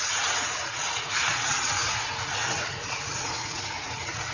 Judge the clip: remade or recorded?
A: remade